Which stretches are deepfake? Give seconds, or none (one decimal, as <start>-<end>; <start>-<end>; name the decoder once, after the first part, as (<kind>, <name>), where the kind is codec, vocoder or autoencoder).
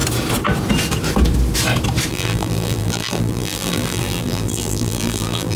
2.1-5.6 (vocoder, BigVGAN v2)